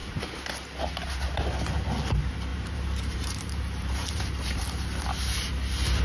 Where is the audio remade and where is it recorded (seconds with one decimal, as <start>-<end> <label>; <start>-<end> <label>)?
0.0-2.5 recorded; 2.5-4.5 remade; 4.5-6.0 recorded